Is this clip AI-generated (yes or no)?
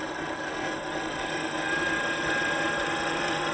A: no